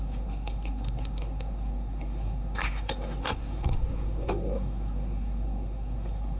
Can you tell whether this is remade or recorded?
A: remade